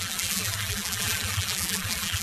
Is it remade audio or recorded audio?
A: remade